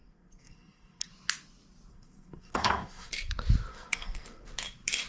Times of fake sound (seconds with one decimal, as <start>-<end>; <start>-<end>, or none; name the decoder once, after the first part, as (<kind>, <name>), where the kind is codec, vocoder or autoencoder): 0.0-1.1 (codec, SNAC); 1.9-3.1; 3.7-4.5